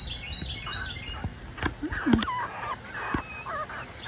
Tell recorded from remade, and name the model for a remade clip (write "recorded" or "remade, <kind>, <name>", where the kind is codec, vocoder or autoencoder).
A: recorded